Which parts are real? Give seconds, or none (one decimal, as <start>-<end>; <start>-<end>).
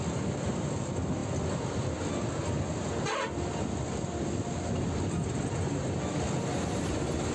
0.0-7.3